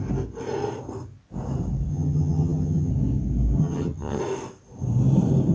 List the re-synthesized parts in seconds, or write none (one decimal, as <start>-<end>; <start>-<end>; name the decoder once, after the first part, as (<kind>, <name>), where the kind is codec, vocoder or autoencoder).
1.9-2.9 (vocoder, HiFi-GAN); 3.6-4.2